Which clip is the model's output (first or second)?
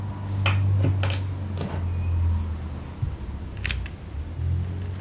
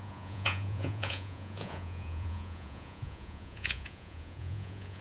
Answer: second